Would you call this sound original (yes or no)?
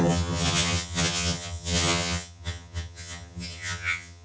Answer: no